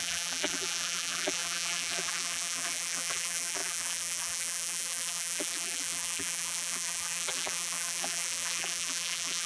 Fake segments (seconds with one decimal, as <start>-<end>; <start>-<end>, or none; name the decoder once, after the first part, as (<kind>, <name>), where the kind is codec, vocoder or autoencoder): 0.0-9.5 (vocoder, BigVGAN v2)